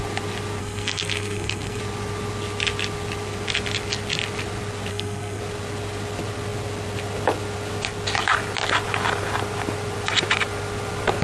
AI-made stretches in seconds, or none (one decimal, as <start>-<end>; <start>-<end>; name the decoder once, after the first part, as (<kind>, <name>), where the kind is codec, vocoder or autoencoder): 0.6-1.8 (codec, SNAC); 4.9-5.4